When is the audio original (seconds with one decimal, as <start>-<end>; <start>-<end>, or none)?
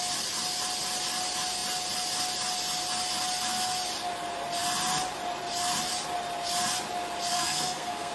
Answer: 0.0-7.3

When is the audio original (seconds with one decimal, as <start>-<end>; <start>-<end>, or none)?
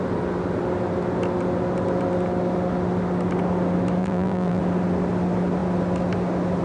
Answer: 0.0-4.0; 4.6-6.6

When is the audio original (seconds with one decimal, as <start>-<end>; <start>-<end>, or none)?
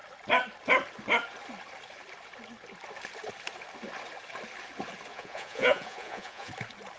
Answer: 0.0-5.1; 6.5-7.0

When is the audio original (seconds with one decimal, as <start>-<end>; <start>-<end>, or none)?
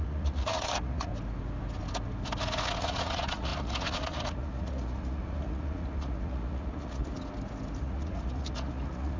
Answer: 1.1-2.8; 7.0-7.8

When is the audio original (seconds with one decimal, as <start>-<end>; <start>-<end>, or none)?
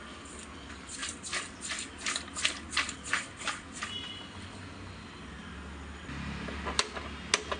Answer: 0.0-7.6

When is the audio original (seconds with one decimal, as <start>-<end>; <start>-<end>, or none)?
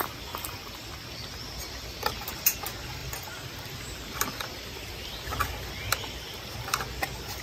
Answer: 0.0-3.0; 5.7-7.4